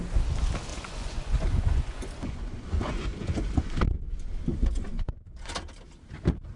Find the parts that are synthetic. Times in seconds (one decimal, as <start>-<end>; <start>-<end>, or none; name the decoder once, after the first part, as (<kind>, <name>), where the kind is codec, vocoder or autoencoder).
0.7-3.8 (vocoder, Vocos); 4.9-5.5